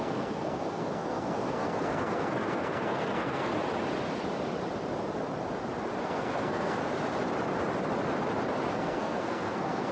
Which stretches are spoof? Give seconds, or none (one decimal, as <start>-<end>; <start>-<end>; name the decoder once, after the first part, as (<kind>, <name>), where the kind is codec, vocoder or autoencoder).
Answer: 0.0-3.5 (codec, SNAC); 6.0-6.8; 8.7-9.9